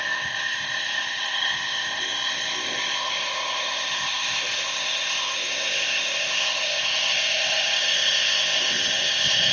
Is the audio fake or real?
fake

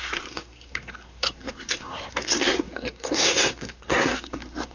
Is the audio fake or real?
fake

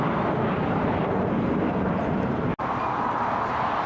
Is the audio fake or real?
real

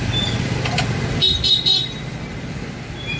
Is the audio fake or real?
real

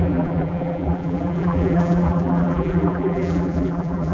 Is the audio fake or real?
fake